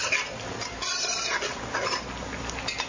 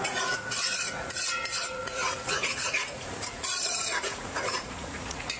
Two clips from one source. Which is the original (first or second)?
first